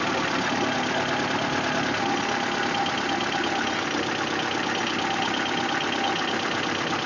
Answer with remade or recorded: recorded